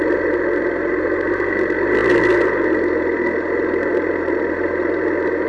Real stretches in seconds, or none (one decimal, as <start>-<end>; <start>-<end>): 0.0-5.5